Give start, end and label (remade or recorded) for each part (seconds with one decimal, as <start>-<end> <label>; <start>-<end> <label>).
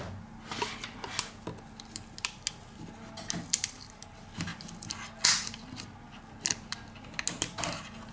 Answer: 0.0-8.1 recorded